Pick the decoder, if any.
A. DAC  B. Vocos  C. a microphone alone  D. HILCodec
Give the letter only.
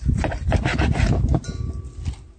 C